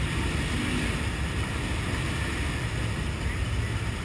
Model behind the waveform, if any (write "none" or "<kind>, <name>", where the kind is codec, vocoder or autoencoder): none